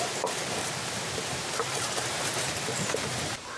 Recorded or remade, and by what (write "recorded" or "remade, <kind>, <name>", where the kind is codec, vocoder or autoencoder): remade, vocoder, BigVGAN v2